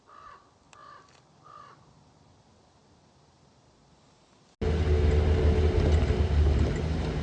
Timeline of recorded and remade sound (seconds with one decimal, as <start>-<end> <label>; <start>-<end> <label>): 0.0-7.2 recorded